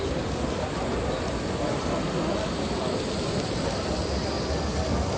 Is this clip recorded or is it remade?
recorded